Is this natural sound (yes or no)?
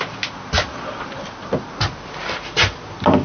yes